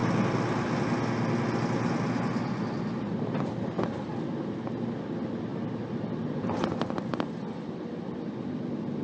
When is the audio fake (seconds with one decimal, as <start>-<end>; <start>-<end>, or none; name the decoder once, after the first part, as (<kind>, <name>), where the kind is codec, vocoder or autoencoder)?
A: 5.5-8.1 (vocoder, BigVGAN v2)